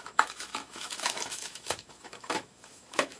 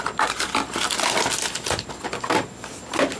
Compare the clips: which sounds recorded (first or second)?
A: second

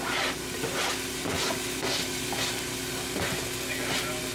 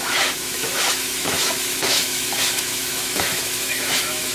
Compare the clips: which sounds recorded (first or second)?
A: first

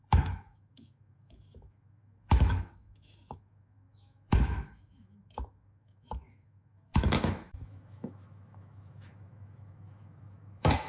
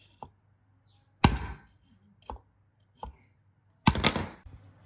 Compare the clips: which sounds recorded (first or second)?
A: second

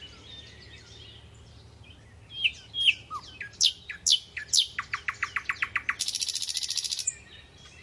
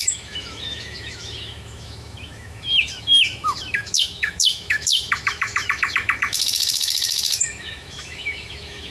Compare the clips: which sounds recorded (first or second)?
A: first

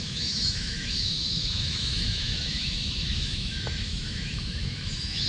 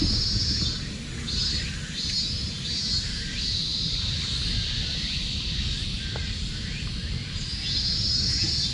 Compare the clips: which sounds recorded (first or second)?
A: second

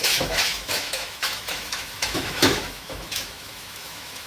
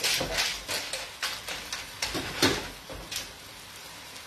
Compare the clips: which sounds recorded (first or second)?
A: second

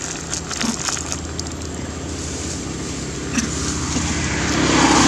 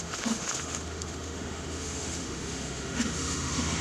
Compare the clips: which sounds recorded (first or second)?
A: first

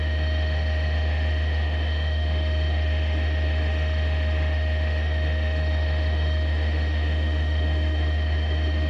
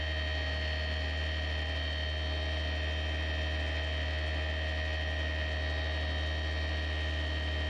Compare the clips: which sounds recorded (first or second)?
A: second